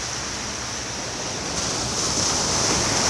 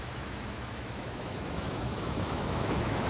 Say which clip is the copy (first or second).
second